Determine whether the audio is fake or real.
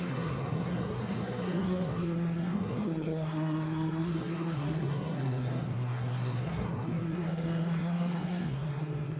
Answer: fake